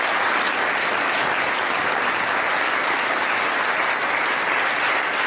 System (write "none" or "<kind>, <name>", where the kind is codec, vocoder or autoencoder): none